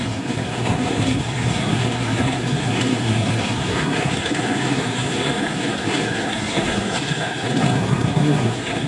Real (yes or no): no